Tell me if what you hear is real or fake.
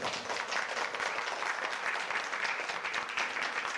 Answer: real